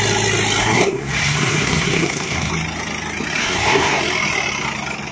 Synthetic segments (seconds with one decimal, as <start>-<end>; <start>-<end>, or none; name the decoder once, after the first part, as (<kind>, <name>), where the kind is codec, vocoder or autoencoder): 0.6-2.5 (codec, SNAC); 3.4-4.0